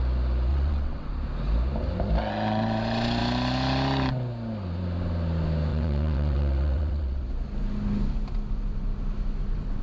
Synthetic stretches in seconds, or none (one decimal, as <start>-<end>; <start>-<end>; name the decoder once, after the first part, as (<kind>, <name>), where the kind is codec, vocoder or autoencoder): 0.5-1.1 (vocoder, WaveNeXt); 5.7-7.2